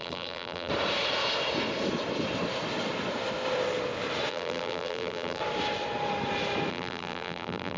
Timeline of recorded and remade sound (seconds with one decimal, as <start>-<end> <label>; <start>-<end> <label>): 0.0-0.7 remade; 0.7-4.3 recorded; 4.3-5.4 remade; 5.4-6.7 recorded; 6.7-7.8 remade